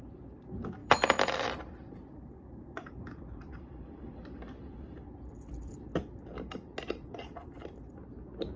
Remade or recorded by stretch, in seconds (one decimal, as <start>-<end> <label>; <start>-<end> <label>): 0.0-0.8 recorded; 0.8-5.8 remade; 5.8-7.4 recorded; 7.4-8.0 remade; 8.0-8.6 recorded

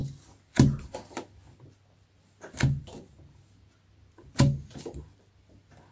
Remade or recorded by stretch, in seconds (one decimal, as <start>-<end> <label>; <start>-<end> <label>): 0.0-5.9 recorded

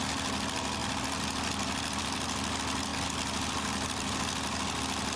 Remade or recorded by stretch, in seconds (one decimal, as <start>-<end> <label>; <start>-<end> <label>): 0.0-5.2 recorded